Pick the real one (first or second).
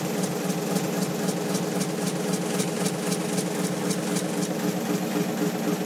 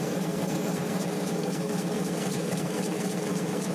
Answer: first